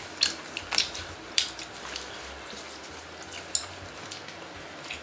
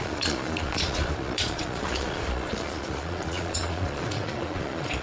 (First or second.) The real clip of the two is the first